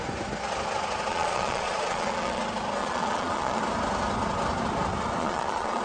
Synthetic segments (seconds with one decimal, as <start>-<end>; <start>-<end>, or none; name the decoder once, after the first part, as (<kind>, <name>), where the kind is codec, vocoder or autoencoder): 1.1-2.4 (vocoder, Vocos); 2.8-3.6; 5.2-5.8